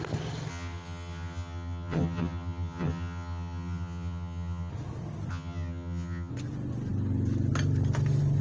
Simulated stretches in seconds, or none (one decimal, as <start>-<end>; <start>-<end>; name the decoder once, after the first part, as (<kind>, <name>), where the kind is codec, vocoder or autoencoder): 0.5-4.7 (vocoder, HiFi-GAN); 5.3-6.3